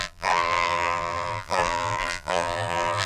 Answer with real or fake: fake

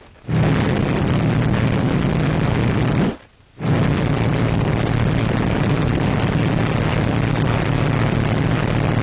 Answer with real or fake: real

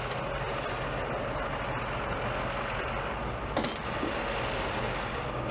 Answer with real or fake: real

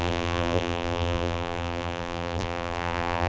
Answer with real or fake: fake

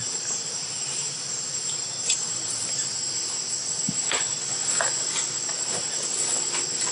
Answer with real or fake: real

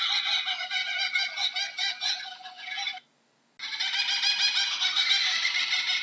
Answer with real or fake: real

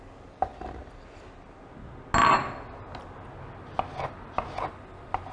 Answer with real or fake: real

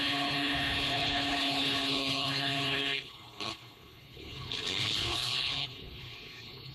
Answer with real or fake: fake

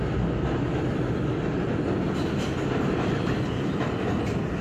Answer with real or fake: real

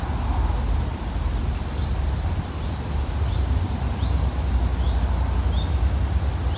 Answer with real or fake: real